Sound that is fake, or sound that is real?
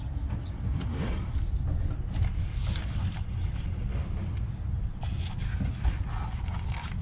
real